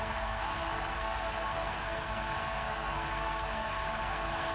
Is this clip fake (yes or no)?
yes